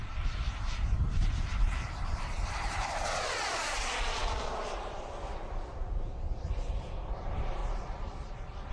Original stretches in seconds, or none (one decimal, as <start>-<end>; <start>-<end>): 7.6-8.7